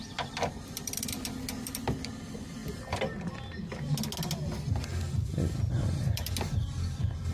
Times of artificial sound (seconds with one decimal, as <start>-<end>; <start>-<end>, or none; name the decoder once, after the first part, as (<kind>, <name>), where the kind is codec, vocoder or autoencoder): 0.0-2.6 (vocoder, BigVGAN v2); 5.5-7.3